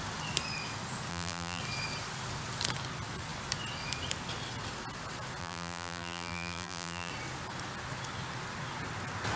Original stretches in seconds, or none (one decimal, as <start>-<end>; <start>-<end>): 0.0-1.1; 1.6-5.4; 7.1-9.4